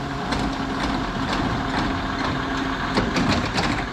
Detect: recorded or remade recorded